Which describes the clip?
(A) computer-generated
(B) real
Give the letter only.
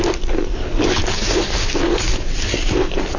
B